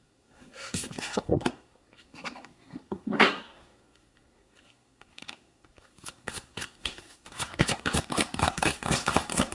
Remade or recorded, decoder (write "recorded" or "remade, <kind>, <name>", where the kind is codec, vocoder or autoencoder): remade, codec, SNAC